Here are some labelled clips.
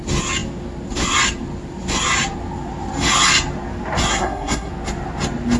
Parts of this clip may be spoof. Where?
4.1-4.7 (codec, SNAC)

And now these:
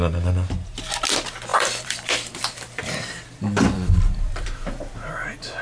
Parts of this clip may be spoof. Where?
1.5-4.9 (vocoder, BigVGAN v2)

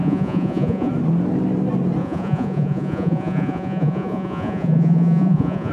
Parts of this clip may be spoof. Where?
0.0-0.9 (vocoder, Vocos); 2.0-5.7

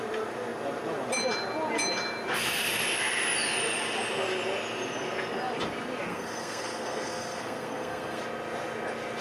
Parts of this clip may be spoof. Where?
6.1-8.2 (codec, SNAC)

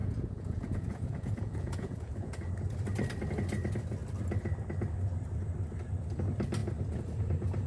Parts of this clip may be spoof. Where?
0.0-2.5 (vocoder, Vocos)